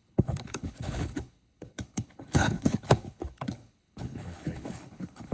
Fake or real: fake